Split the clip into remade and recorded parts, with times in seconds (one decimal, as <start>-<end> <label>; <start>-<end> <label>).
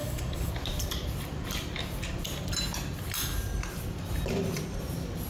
0.0-0.5 remade; 0.5-5.3 recorded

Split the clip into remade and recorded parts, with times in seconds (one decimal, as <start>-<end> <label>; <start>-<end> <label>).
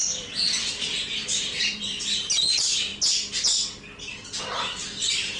0.0-2.9 remade; 2.9-4.4 recorded; 4.4-5.4 remade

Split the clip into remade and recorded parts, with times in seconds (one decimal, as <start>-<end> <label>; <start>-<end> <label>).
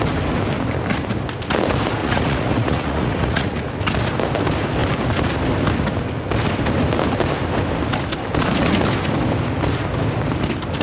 0.0-2.0 recorded; 2.0-3.6 remade; 3.6-10.8 recorded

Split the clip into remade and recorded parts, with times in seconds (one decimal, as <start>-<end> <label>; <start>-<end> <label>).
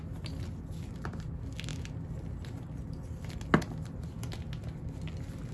0.0-5.5 recorded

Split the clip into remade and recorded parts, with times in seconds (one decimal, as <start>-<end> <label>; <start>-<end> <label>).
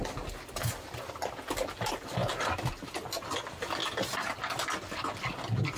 0.0-5.8 recorded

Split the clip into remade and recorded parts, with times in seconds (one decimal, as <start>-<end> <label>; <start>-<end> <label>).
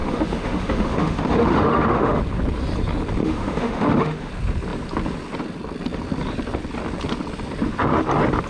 0.0-2.2 remade; 2.2-3.2 recorded; 3.2-4.3 remade; 4.3-8.5 recorded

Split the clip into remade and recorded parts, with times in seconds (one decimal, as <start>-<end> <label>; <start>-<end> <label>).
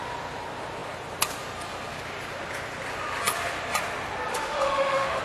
0.0-4.3 recorded; 4.3-5.2 remade